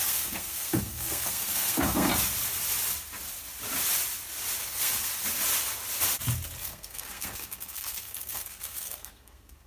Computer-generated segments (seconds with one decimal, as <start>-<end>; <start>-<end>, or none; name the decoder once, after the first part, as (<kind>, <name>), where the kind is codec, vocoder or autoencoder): 0.0-2.1 (codec, SNAC); 4.6-5.1; 6.6-9.7